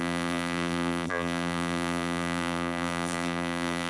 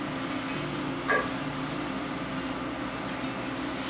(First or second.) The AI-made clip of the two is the first